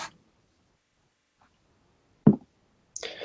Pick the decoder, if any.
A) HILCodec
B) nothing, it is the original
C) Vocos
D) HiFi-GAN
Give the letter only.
B